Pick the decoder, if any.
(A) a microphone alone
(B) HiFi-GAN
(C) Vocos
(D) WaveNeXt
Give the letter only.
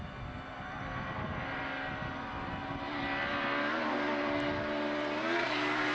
A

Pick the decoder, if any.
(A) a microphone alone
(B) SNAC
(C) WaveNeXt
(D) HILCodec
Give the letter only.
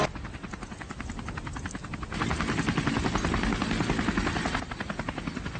A